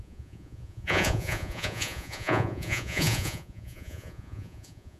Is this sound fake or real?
fake